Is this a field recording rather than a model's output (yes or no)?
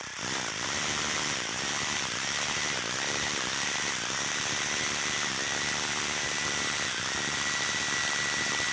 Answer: no